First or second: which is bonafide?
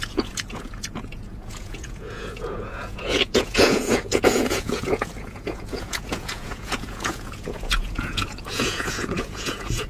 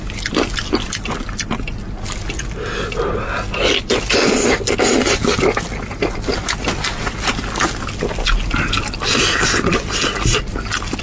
second